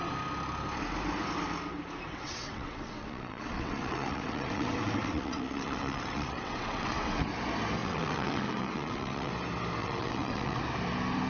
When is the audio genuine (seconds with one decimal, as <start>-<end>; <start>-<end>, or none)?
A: 0.0-2.1; 7.3-7.8; 9.3-9.8; 10.6-11.3